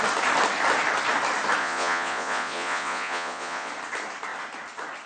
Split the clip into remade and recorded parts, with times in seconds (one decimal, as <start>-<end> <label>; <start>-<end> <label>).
0.0-1.6 recorded; 1.6-3.7 remade; 3.7-5.1 recorded